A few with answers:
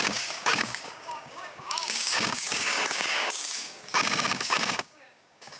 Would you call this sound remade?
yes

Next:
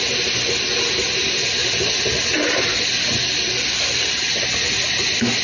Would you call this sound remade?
no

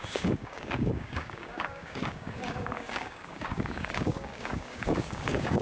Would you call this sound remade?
yes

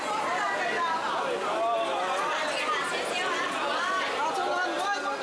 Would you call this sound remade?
no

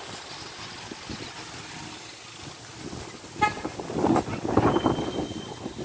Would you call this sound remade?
no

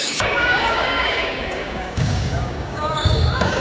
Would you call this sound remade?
yes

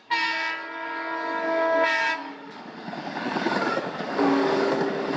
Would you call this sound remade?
yes